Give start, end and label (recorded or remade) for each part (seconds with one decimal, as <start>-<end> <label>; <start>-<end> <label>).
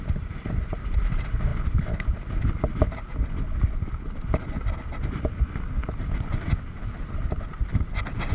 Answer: 0.0-8.3 recorded